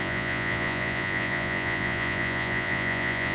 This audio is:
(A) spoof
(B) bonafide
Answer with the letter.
A